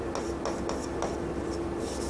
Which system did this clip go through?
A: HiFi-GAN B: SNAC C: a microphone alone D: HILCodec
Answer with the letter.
C